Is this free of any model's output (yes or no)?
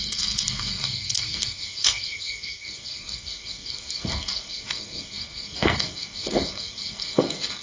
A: no